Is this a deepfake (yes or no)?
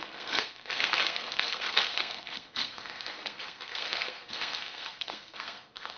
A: yes